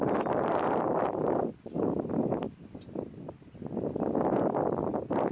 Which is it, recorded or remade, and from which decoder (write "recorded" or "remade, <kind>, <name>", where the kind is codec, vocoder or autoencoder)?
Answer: recorded